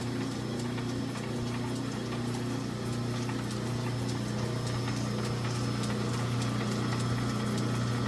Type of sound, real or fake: real